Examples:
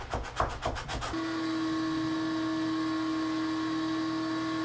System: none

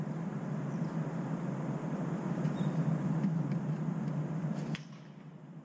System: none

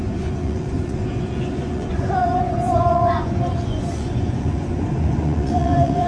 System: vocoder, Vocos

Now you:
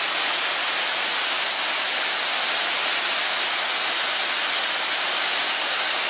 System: none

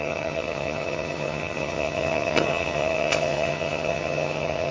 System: vocoder, HiFi-GAN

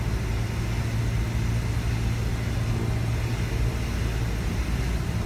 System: none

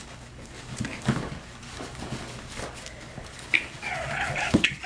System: codec, DAC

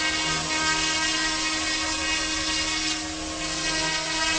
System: none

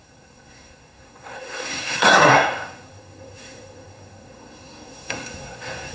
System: codec, SNAC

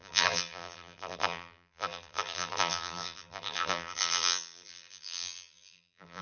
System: vocoder, BigVGAN v2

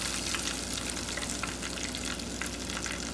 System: none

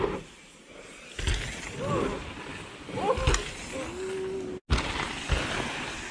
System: none